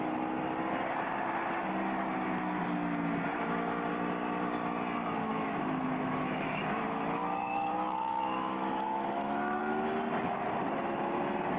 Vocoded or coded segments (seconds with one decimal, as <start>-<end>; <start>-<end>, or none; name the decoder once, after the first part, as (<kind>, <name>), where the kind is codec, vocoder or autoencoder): 3.3-3.9 (autoencoder, DAC-VAE); 5.3-9.6